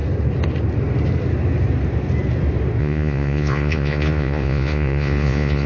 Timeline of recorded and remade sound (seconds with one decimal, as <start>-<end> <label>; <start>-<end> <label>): 0.0-2.8 recorded; 2.8-5.7 remade